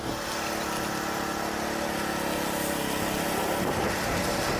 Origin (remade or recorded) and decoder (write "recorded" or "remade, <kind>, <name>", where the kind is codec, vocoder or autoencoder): recorded